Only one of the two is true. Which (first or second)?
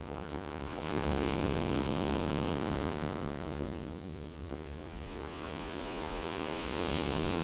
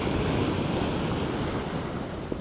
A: second